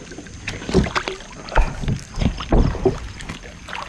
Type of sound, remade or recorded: recorded